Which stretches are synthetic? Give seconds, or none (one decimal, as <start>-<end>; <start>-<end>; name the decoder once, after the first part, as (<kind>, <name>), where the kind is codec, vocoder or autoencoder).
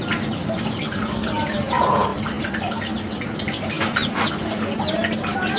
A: none